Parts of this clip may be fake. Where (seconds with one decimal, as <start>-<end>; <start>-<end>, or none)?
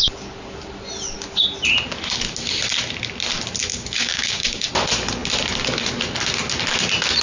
3.7-4.7